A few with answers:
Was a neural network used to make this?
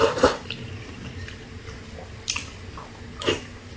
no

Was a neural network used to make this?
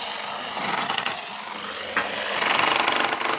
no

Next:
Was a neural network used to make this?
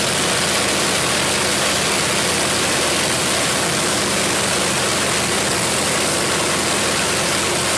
no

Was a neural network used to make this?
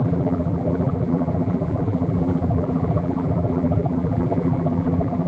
yes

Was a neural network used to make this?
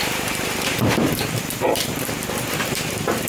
yes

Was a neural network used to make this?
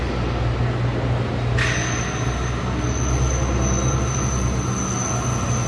no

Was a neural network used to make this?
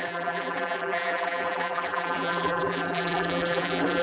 yes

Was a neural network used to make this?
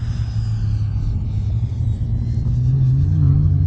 no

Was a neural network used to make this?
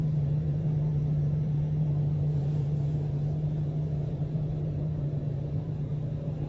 yes